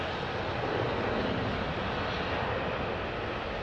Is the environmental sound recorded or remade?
recorded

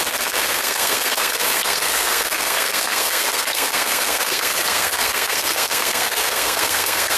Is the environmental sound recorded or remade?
remade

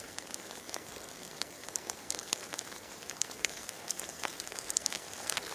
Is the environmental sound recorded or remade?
remade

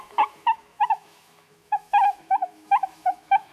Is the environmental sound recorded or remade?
remade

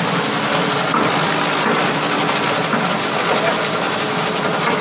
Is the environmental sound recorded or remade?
recorded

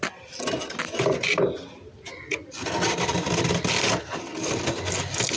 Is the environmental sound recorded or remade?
recorded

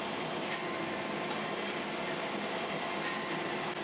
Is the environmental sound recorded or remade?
recorded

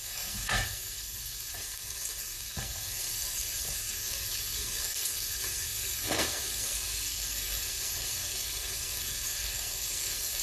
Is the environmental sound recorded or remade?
remade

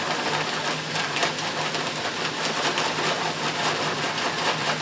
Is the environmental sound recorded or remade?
recorded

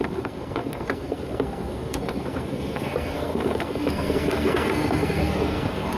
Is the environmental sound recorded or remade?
remade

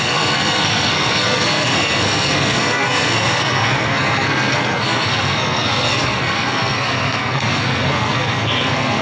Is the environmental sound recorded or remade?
remade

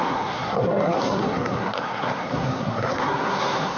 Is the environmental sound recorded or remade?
remade